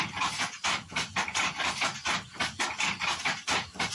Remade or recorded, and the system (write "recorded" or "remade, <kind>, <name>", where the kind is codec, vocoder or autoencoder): recorded